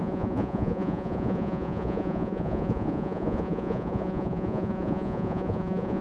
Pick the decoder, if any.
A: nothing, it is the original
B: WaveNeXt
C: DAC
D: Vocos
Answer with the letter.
D